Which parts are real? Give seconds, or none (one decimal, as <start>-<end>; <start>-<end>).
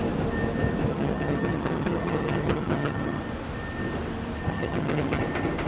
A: 0.0-0.9; 3.2-4.5; 5.2-5.7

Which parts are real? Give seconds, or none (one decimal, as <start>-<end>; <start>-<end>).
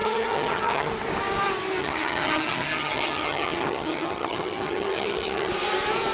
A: 0.9-1.8; 5.5-6.1